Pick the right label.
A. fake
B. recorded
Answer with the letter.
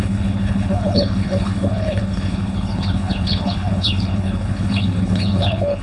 A